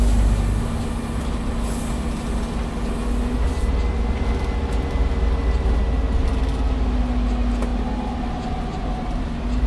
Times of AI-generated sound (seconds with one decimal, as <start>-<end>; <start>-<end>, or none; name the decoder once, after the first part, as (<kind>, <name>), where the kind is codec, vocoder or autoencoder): 7.7-8.2 (vocoder, BigVGAN v2)

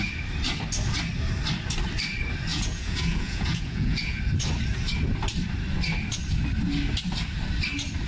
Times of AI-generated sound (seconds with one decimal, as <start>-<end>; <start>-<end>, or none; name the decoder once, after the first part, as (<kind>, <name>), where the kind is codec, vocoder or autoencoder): 2.5-4.2 (vocoder, Vocos)

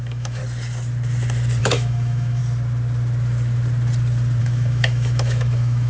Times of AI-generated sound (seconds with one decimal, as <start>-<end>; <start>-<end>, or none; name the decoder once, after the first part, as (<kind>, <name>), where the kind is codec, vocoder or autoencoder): 0.0-0.4 (autoencoder, DAC-VAE); 1.6-2.4; 4.4-5.9

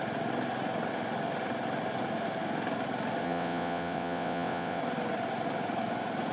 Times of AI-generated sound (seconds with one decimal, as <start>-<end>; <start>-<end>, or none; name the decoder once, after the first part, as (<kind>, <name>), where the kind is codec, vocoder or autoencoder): 3.2-4.8 (vocoder, WaveNeXt)

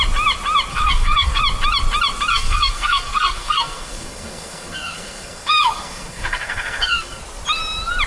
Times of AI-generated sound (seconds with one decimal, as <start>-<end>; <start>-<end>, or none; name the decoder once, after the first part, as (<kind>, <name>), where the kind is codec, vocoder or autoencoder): 0.7-1.4 (codec, SNAC); 2.3-7.2

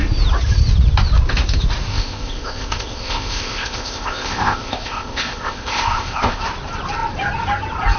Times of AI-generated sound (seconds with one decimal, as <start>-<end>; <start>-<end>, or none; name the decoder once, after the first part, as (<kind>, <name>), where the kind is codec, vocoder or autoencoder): 1.9-6.4 (codec, ZipCodec)